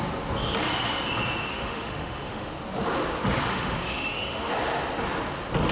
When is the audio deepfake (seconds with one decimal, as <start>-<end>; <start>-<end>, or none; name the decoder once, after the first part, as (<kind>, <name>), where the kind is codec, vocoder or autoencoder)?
1.5-2.5 (autoencoder, DAC-VAE); 3.5-4.5